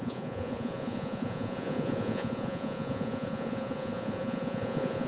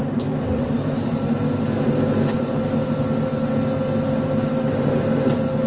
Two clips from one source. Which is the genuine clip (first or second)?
second